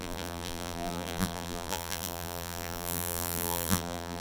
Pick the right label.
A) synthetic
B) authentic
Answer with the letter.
A